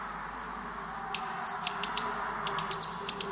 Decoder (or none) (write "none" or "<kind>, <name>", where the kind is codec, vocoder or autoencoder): none